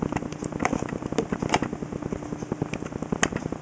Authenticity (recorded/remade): recorded